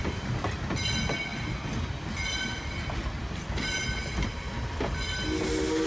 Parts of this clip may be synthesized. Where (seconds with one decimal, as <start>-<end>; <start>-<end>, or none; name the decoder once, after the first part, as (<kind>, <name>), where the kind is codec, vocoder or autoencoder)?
none